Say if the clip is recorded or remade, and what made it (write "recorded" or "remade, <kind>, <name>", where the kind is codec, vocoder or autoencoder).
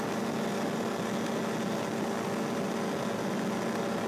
recorded